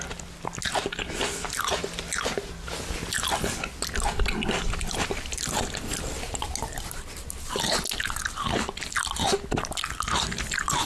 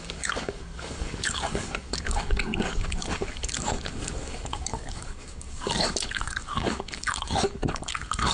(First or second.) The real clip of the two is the first